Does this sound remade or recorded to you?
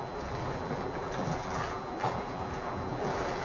remade